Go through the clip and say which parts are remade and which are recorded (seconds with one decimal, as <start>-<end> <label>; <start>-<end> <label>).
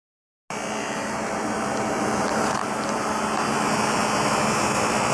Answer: 0.0-0.8 recorded; 0.8-3.1 remade; 3.1-5.1 recorded